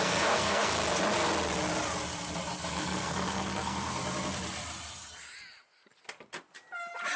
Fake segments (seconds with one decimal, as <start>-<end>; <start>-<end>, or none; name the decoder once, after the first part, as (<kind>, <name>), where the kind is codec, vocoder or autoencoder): 0.0-0.7 (codec, SNAC); 2.7-4.0